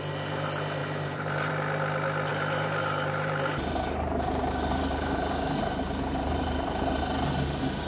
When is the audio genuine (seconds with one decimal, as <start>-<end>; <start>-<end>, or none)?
0.0-0.8; 1.5-2.3; 7.0-7.9